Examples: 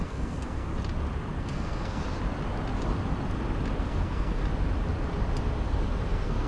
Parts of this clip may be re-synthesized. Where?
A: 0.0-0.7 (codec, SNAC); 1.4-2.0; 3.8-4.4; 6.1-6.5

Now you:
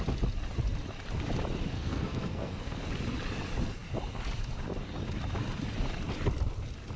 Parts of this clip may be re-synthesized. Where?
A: 1.7-2.8 (codec, SNAC)

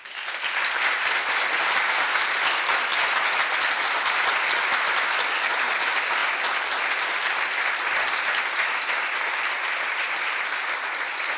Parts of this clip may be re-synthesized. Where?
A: none